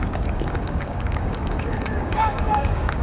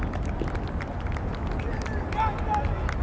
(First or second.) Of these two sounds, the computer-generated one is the first